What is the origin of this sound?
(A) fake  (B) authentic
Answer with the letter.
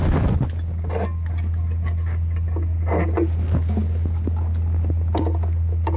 B